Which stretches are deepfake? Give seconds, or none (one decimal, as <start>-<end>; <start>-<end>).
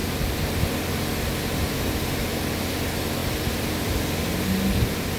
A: none